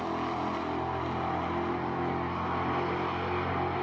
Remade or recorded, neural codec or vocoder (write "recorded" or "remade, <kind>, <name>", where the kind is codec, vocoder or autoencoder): recorded